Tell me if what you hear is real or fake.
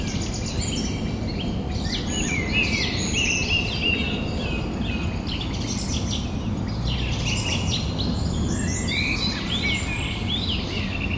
real